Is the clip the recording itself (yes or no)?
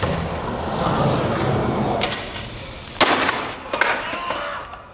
yes